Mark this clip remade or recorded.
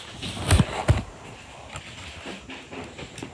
recorded